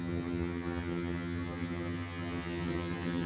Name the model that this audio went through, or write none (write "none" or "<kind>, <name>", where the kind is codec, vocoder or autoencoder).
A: vocoder, HiFi-GAN